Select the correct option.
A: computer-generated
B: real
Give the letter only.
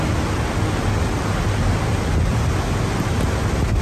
B